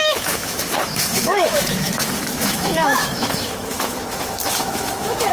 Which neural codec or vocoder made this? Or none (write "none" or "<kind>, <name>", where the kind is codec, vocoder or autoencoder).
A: autoencoder, DAC-VAE